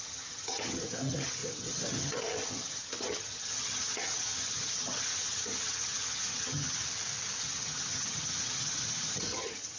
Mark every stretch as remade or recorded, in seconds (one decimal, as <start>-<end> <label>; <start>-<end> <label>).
0.0-6.8 remade; 6.8-7.4 recorded; 7.4-9.8 remade